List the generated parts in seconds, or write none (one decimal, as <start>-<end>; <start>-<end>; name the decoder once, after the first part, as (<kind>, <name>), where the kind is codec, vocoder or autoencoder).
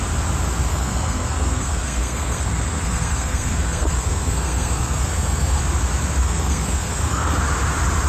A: 0.7-5.6 (codec, SNAC); 6.2-7.4